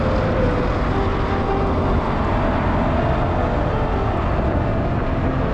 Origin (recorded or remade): recorded